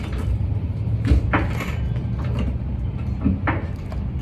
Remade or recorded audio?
recorded